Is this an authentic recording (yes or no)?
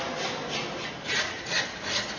yes